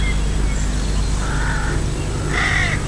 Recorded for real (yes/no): yes